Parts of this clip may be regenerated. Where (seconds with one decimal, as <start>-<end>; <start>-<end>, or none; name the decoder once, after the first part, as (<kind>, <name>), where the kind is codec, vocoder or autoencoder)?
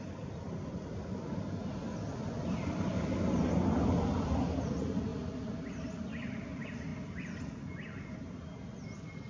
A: none